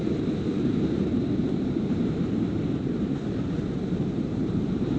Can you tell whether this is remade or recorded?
remade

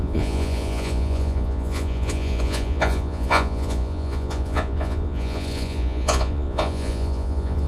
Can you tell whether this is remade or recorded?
remade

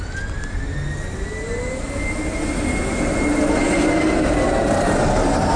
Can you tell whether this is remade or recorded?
recorded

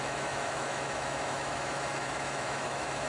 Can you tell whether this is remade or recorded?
remade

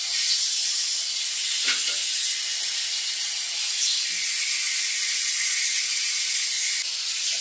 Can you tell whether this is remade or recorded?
recorded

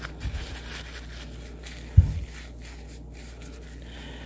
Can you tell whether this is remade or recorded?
recorded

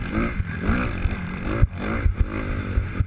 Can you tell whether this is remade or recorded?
remade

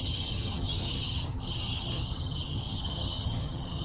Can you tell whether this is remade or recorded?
remade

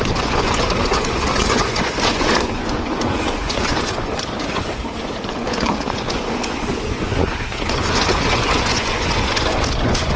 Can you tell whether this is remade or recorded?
remade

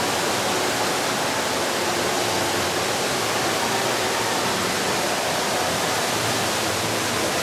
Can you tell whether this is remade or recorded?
recorded